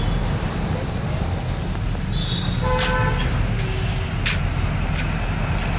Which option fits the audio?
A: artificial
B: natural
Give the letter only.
B